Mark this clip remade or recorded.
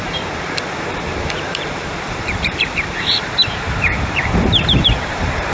remade